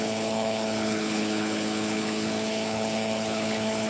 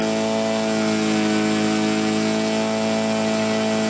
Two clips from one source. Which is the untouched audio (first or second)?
second